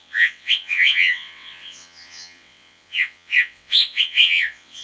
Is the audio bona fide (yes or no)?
no